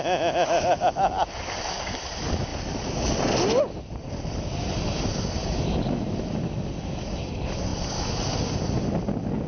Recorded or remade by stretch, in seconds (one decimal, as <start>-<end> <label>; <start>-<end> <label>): 0.0-9.5 recorded